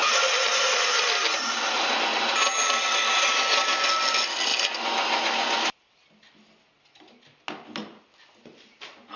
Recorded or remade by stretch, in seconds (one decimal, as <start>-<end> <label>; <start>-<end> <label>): 0.0-9.2 recorded